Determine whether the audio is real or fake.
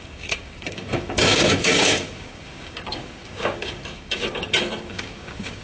fake